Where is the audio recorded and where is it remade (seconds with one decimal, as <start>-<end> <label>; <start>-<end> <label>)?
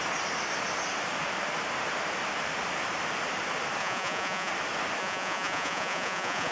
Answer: 0.0-3.8 recorded; 3.8-4.5 remade; 4.5-5.0 recorded; 5.0-6.5 remade